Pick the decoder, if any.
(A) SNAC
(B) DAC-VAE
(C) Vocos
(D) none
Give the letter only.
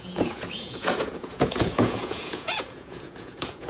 C